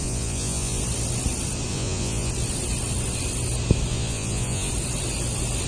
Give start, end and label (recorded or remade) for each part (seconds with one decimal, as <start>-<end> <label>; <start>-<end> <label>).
0.0-0.8 remade; 0.8-1.7 recorded; 1.7-2.3 remade; 2.3-3.9 recorded; 3.9-4.7 remade; 4.7-5.7 recorded